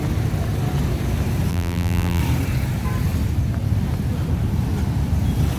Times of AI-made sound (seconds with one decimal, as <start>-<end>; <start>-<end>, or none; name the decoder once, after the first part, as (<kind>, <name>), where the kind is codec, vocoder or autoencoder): 1.5-2.2 (vocoder, BigVGAN v2)